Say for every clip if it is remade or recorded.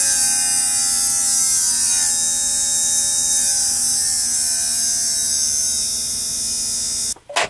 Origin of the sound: recorded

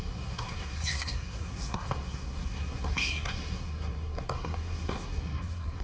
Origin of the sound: remade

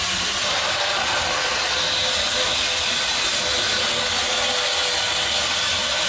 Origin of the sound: recorded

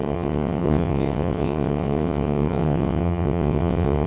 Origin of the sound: remade